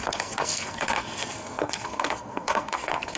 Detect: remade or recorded remade